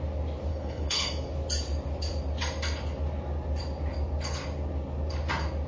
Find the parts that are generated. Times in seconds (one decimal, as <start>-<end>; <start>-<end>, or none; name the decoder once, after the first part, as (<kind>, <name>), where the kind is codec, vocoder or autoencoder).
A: 0.5-1.1 (codec, HILCodec)